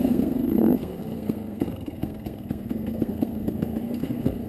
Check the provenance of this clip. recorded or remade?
remade